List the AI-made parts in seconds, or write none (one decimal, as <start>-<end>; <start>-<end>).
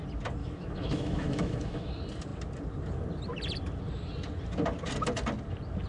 0.4-1.9